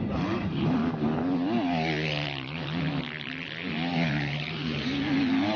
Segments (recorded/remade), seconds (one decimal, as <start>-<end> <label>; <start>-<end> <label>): 0.0-0.8 remade; 0.8-4.1 recorded; 4.1-4.9 remade; 4.9-5.6 recorded